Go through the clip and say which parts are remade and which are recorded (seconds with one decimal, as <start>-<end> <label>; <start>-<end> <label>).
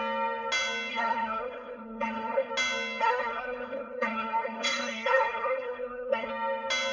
0.0-0.9 recorded; 0.9-2.5 remade; 2.5-3.0 recorded; 3.0-6.3 remade; 6.3-6.9 recorded